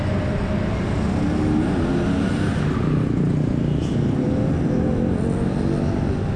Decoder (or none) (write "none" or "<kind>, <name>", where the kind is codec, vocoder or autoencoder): none